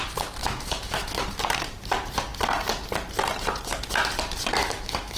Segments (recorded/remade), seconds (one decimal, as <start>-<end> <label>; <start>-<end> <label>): 0.0-0.4 recorded; 0.4-1.2 remade; 1.2-4.6 recorded; 4.6-5.2 remade